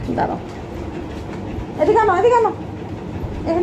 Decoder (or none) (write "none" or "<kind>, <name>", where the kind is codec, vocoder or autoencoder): none